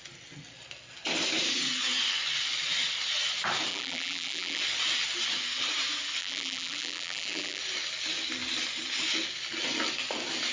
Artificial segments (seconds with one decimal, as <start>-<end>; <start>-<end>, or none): 3.7-4.6; 6.2-7.6